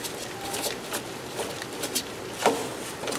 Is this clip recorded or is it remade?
recorded